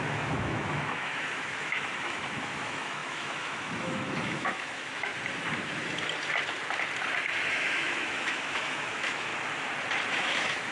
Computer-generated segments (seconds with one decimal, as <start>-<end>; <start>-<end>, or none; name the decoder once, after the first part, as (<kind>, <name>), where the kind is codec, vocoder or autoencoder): 0.0-5.1 (autoencoder, DAC-VAE); 7.5-9.3; 10.1-10.7

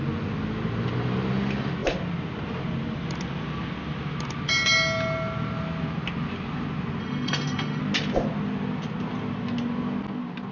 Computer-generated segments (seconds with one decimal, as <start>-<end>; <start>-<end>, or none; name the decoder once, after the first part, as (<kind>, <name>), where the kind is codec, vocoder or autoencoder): 7.0-7.8 (autoencoder, DAC-VAE)

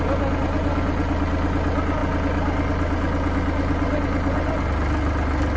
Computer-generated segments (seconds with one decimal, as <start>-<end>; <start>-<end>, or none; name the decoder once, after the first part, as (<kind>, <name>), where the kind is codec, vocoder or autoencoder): none